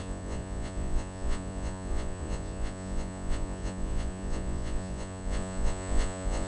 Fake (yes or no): yes